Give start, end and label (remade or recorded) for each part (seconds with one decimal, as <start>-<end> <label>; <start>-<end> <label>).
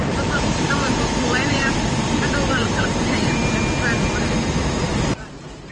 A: 0.0-3.4 remade; 3.4-4.9 recorded; 4.9-5.7 remade